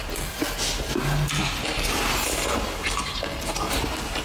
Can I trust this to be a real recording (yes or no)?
yes